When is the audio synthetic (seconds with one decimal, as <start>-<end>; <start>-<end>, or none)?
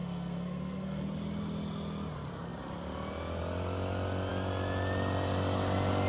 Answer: 0.0-1.0